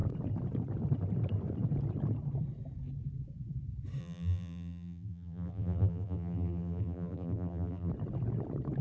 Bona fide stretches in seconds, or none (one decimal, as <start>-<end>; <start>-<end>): 0.0-4.0; 7.9-8.8